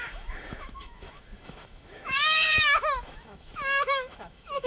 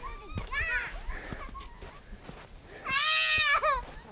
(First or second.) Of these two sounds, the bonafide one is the second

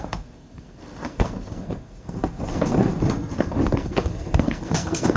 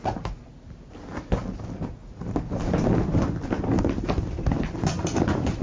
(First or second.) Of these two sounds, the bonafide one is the second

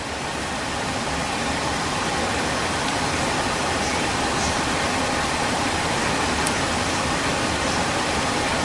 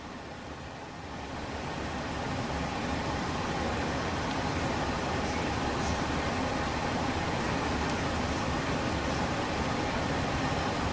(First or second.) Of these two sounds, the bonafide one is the second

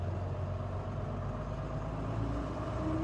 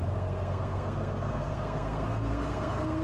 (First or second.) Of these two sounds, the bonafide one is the first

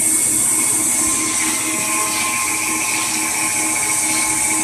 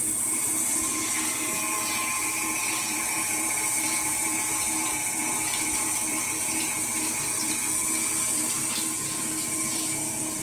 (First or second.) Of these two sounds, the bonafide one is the first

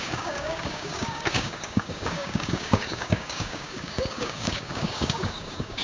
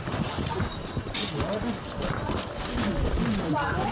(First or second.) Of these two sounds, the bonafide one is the second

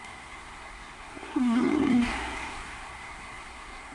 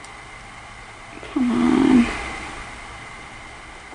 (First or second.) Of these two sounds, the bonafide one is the second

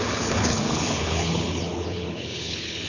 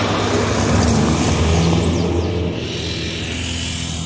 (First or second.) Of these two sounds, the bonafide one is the second